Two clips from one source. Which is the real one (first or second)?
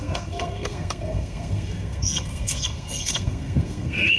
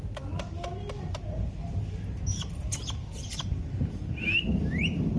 second